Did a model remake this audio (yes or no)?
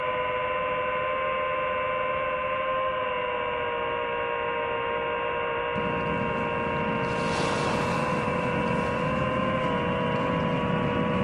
no